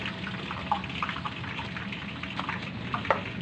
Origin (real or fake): real